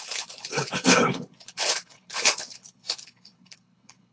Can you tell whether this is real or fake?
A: fake